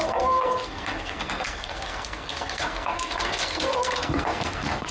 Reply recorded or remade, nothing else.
remade